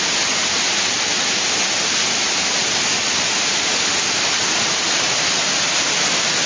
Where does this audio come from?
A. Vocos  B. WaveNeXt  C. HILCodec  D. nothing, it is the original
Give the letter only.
D